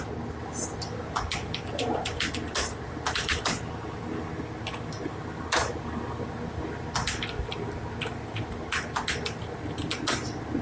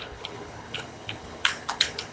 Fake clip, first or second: second